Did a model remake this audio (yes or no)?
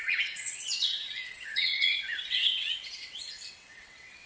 yes